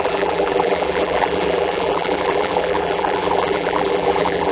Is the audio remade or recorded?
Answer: remade